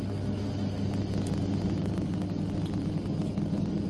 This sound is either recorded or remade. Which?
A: recorded